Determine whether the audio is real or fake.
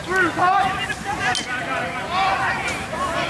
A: real